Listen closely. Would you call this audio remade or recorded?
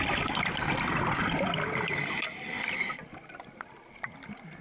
recorded